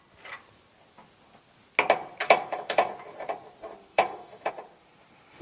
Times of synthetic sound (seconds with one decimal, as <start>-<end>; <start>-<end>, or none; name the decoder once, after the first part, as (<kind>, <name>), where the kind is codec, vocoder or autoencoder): 2.2-2.9 (autoencoder, DAC-VAE); 3.9-4.5